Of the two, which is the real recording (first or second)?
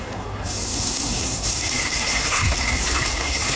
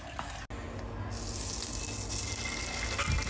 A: second